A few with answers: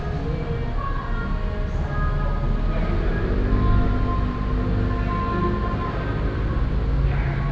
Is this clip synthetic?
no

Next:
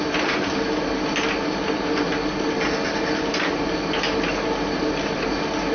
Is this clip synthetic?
no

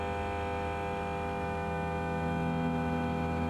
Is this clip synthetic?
yes